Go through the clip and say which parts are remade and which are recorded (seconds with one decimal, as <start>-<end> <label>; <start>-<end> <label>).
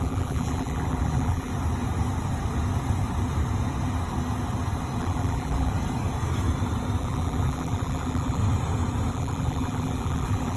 0.0-1.5 remade; 1.5-5.0 recorded; 5.0-5.7 remade; 5.7-7.0 recorded; 7.0-8.4 remade; 8.4-9.1 recorded; 9.1-10.6 remade